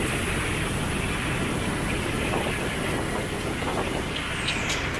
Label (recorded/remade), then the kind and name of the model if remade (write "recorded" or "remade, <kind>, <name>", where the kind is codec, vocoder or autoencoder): recorded